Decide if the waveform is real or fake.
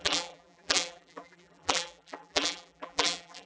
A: fake